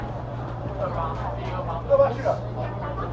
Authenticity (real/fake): fake